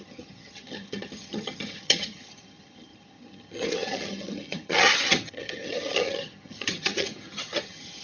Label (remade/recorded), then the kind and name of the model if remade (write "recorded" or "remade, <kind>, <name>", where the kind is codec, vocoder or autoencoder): remade, vocoder, HiFi-GAN